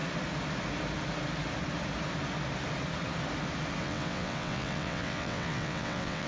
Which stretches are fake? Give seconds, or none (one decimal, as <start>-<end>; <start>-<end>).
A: 3.8-6.3